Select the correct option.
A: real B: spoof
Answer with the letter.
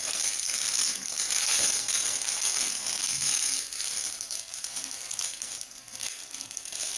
B